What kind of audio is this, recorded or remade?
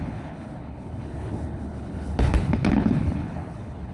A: remade